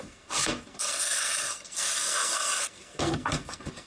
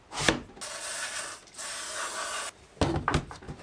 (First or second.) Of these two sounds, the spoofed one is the first